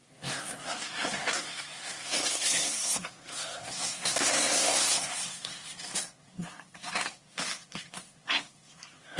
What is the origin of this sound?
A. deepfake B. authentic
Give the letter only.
A